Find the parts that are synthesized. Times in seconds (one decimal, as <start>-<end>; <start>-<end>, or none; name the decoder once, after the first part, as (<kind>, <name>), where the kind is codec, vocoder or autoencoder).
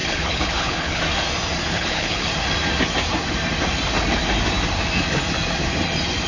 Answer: 0.0-1.0 (codec, HILCodec); 1.7-2.3